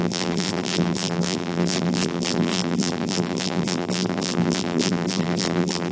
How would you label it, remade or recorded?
remade